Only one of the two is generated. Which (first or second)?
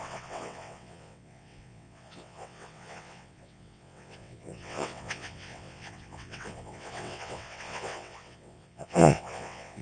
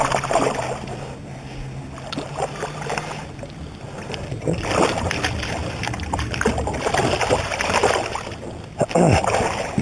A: first